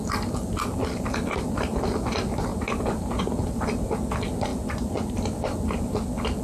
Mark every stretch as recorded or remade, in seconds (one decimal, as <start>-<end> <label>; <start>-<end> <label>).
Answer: 0.0-6.4 recorded